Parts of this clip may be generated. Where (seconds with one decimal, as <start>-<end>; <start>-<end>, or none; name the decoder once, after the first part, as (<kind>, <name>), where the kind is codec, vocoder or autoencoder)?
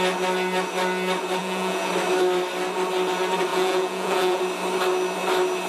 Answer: 1.4-1.9 (vocoder, Vocos); 3.5-4.4